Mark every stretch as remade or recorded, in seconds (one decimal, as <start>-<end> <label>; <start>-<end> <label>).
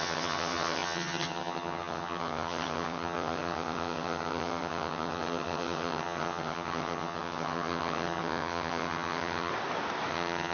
0.0-9.5 remade; 9.5-10.1 recorded; 10.1-10.5 remade